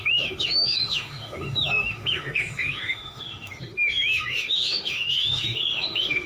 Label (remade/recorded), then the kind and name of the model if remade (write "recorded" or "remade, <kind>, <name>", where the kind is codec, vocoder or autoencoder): remade, autoencoder, DAC-VAE